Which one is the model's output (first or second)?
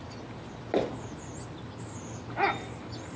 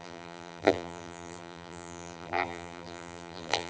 second